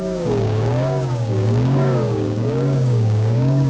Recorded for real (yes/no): no